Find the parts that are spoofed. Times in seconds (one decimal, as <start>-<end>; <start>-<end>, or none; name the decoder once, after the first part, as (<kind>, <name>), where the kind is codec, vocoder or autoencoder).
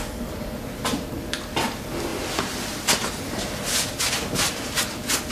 2.1-3.2 (vocoder, BigVGAN v2)